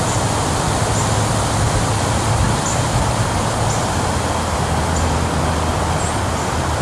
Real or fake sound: real